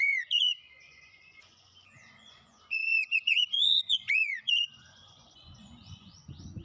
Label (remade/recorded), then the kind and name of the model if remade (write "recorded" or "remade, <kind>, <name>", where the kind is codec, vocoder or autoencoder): remade, vocoder, Vocos